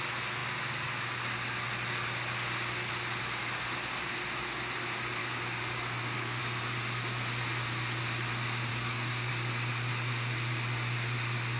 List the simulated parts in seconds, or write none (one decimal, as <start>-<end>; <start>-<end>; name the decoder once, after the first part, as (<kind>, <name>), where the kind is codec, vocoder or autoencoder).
5.2-6.4 (codec, DAC); 8.7-9.3